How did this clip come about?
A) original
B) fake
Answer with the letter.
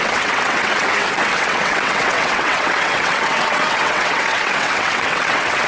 B